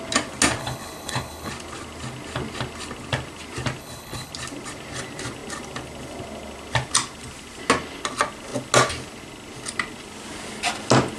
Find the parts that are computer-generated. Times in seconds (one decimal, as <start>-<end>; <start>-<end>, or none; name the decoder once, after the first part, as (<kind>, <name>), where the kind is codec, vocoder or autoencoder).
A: 0.6-1.5 (codec, HILCodec); 3.8-4.3